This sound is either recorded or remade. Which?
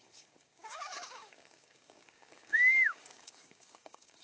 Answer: remade